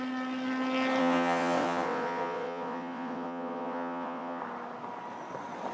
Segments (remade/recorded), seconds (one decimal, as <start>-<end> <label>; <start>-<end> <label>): 0.0-1.0 recorded; 1.0-4.4 remade; 4.4-5.7 recorded